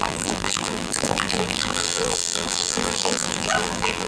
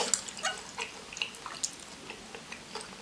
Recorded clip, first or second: second